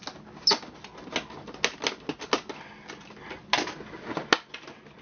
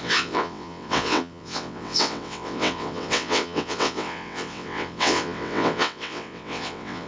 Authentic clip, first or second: first